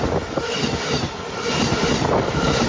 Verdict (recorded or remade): recorded